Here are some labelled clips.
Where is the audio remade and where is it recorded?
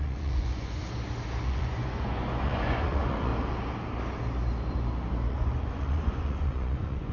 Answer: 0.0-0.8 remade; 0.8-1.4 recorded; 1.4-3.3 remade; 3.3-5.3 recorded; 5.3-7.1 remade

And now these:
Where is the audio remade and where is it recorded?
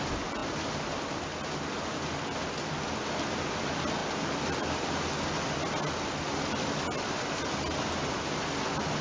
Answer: 0.0-9.0 recorded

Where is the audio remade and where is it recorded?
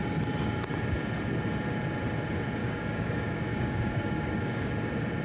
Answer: 0.0-2.6 recorded; 2.6-4.7 remade; 4.7-5.2 recorded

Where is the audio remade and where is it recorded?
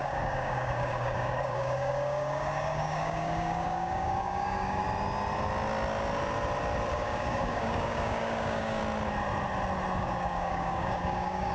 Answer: 0.0-4.8 remade; 4.8-6.9 recorded; 6.9-8.8 remade; 8.8-10.0 recorded; 10.0-11.5 remade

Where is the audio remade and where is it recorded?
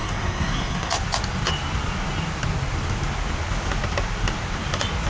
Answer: 0.0-0.9 remade; 0.9-5.1 recorded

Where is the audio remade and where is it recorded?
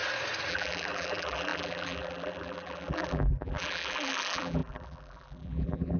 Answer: 0.0-0.5 recorded; 0.5-6.0 remade